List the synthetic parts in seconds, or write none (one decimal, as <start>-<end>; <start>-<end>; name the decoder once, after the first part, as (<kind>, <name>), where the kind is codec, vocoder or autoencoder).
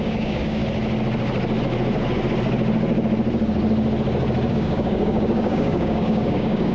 0.0-0.6 (codec, DAC); 4.5-6.7